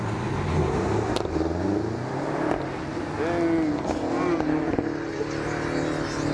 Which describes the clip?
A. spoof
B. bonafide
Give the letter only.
B